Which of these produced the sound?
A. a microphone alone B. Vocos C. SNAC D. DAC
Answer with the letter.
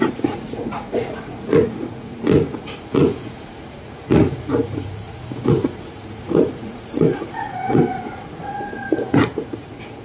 B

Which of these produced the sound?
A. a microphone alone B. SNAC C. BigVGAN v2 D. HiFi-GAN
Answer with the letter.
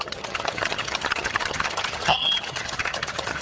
D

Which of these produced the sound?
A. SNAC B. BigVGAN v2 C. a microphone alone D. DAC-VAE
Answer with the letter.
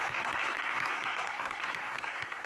A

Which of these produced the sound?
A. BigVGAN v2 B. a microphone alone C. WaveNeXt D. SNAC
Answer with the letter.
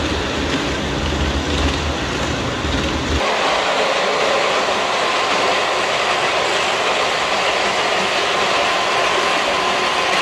B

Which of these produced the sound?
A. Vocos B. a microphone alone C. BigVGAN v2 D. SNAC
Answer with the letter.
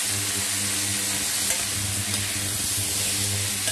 B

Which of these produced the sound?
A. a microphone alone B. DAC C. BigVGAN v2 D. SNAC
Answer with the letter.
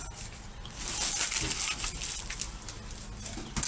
A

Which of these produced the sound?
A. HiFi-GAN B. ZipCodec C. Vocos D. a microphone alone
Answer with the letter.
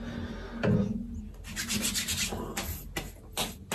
D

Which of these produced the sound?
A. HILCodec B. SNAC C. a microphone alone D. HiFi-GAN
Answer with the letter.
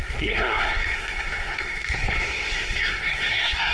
B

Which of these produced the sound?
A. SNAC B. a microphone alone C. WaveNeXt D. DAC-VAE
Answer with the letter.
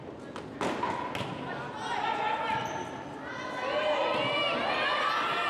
B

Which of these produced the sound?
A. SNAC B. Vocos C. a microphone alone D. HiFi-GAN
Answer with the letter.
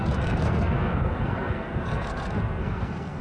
A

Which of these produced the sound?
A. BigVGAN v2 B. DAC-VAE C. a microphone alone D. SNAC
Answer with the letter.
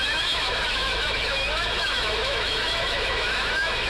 B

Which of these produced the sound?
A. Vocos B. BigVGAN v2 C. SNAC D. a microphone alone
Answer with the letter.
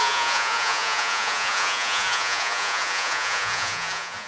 A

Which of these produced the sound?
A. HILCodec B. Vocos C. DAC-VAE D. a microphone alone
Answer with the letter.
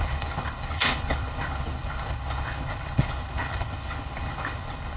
A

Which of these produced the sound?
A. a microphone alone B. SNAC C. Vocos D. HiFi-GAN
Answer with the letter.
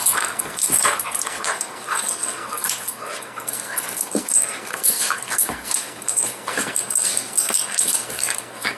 B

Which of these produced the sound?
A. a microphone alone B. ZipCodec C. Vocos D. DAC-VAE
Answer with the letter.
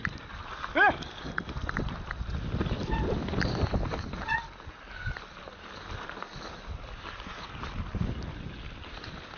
A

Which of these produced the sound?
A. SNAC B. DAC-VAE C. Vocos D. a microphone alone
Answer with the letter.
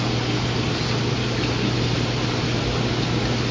D